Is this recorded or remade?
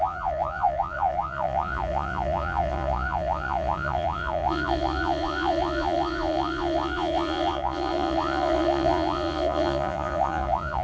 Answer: remade